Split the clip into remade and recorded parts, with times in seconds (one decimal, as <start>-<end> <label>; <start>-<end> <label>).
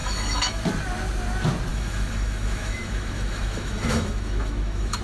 0.0-0.6 remade; 0.6-1.7 recorded; 1.7-5.0 remade